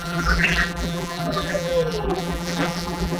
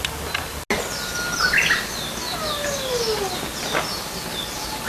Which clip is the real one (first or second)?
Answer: second